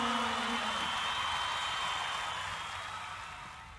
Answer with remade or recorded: recorded